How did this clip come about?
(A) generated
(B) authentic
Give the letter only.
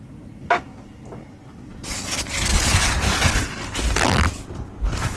B